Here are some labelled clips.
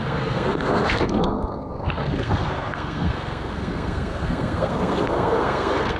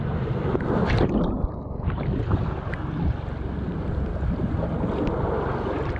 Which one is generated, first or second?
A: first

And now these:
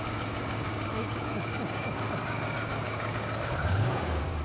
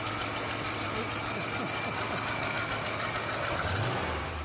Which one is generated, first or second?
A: first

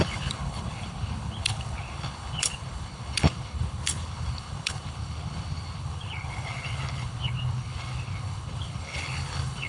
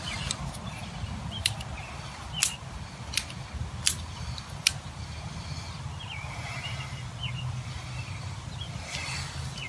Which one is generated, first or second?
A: first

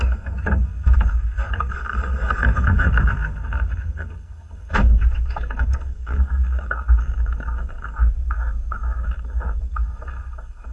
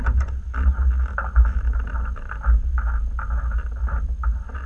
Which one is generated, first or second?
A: first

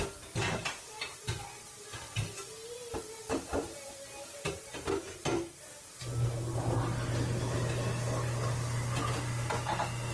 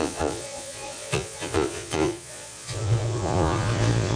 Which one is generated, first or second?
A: second